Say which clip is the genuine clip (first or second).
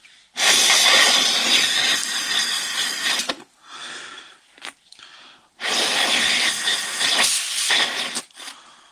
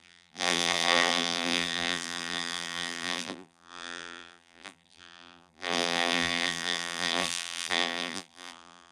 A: first